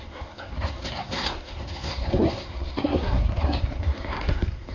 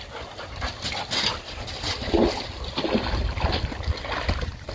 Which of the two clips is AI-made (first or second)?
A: first